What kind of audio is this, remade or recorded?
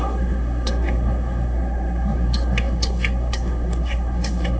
remade